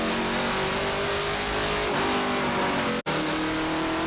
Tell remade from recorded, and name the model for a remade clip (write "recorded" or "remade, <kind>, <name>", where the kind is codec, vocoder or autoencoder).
recorded